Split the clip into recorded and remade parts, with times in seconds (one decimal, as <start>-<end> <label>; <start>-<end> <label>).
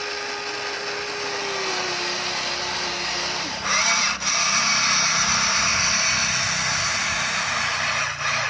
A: 0.0-8.5 recorded